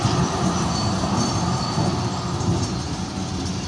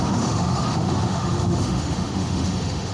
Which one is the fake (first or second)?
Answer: second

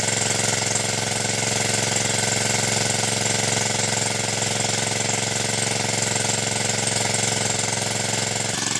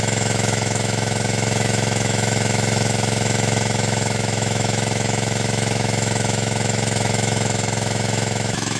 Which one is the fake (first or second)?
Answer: second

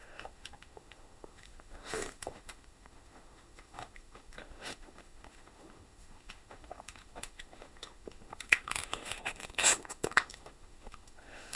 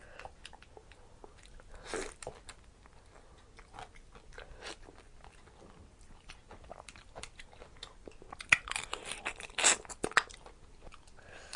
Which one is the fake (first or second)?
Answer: first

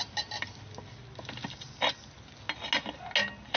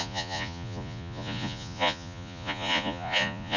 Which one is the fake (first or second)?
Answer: second